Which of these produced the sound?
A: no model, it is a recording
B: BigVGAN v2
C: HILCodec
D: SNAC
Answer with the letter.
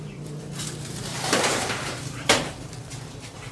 B